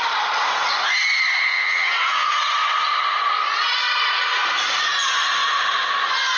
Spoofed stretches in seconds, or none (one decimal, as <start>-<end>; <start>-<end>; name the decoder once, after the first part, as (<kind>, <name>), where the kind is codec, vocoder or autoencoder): 1.5-2.3 (vocoder, WaveNeXt)